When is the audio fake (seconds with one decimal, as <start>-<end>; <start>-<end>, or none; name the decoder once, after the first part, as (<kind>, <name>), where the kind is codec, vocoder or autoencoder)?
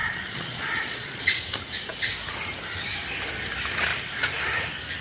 0.0-1.4 (vocoder, Vocos)